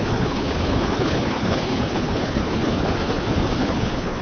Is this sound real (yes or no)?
no